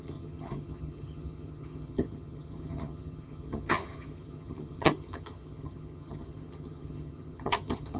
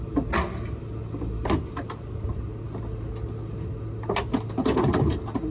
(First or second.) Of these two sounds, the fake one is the first